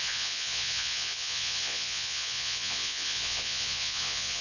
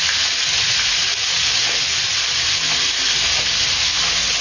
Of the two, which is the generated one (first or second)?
first